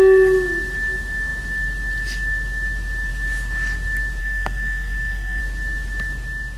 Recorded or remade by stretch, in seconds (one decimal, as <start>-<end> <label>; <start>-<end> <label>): 0.0-4.2 recorded; 4.2-5.4 remade; 5.4-6.6 recorded